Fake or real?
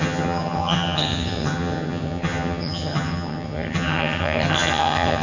fake